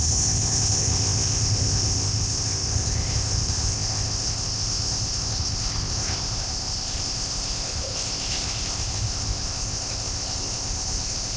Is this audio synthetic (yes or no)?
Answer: yes